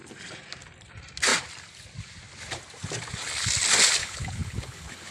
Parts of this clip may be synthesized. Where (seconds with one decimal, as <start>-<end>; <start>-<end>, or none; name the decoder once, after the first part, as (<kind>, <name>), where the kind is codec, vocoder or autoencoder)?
4.0-5.1 (codec, HILCodec)